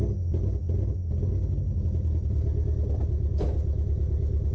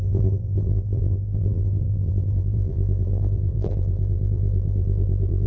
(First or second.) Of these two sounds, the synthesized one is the second